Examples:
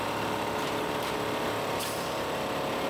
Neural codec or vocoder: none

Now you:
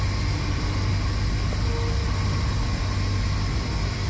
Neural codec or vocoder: none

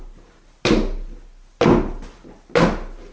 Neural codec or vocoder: none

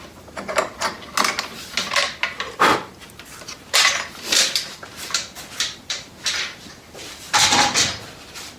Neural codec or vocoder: none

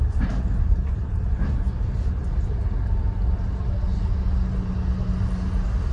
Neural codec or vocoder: none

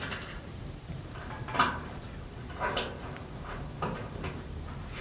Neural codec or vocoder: vocoder, BigVGAN v2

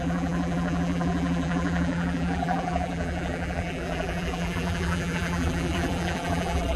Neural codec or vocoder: vocoder, BigVGAN v2